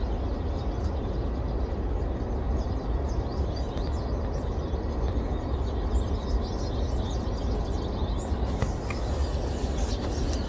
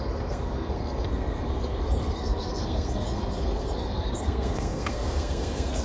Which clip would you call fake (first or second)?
second